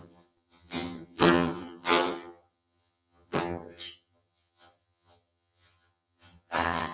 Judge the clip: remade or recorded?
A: remade